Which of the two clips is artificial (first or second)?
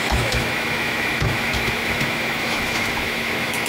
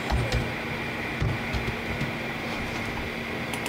first